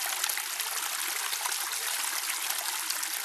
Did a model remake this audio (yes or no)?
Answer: no